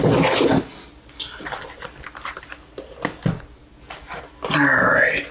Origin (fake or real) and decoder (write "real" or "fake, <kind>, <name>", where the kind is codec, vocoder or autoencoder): real